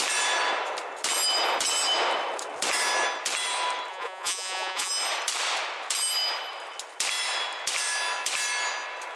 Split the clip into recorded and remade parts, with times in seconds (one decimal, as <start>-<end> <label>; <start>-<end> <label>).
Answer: 0.0-3.9 recorded; 3.9-4.9 remade; 4.9-9.2 recorded